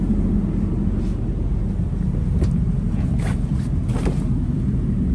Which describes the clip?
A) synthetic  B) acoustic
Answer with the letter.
B